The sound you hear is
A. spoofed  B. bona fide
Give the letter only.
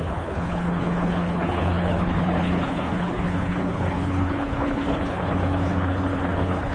A